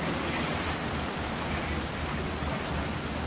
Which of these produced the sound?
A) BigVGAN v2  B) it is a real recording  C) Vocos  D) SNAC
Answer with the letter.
B